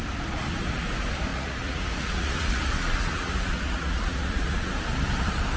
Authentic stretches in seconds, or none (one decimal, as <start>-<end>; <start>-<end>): 0.0-1.3; 4.7-5.6